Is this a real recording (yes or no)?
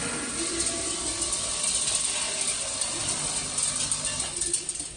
yes